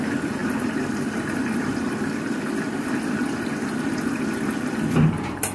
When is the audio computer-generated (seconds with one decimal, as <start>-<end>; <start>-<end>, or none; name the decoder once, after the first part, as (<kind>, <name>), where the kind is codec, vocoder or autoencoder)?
none